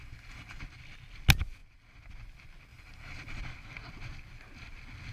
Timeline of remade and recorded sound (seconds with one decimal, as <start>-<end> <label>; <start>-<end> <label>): 0.0-0.6 remade; 0.6-2.7 recorded; 2.7-3.4 remade; 3.4-5.1 recorded